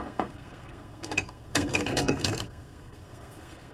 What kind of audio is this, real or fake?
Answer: fake